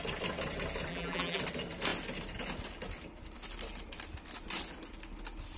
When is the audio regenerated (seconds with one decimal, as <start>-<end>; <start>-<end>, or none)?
0.9-1.4